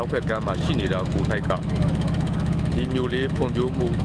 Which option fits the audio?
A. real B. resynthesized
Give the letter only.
B